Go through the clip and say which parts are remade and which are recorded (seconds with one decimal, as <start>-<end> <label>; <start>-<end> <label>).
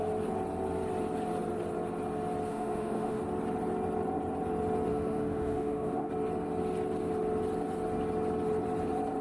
0.0-2.5 recorded; 2.5-3.2 remade; 3.2-4.9 recorded; 4.9-6.1 remade; 6.1-9.2 recorded